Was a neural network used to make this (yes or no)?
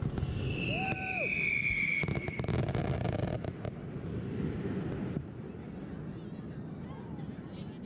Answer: no